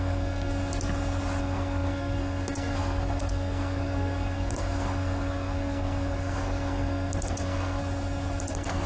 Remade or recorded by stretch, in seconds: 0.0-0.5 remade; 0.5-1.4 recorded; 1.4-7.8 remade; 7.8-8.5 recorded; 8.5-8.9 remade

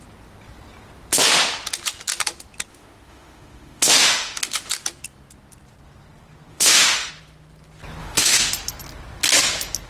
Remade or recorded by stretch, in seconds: 0.0-2.7 recorded; 2.7-4.7 remade; 4.7-6.5 recorded; 6.5-7.1 remade; 7.1-8.0 recorded; 8.0-8.5 remade; 8.5-9.9 recorded

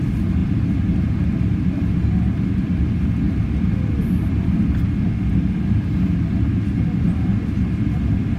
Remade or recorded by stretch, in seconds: 0.0-8.4 recorded

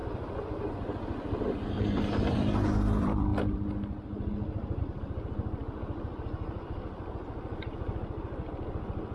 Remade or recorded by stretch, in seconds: 0.0-1.7 recorded; 1.7-3.3 remade; 3.3-4.8 recorded; 4.8-9.1 remade

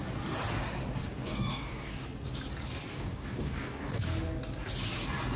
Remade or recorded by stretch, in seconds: 0.0-1.0 recorded; 1.0-2.0 remade; 2.0-2.9 recorded; 2.9-4.0 remade; 4.0-5.4 recorded